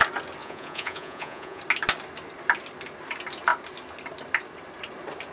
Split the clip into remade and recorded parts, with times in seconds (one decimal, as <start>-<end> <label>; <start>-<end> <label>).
0.0-0.4 recorded; 0.4-1.6 remade; 1.6-5.3 recorded

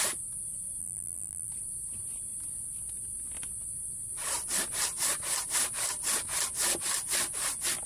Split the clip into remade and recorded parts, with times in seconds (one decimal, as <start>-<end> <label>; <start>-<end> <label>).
0.0-0.8 recorded; 0.8-1.5 remade; 1.5-7.9 recorded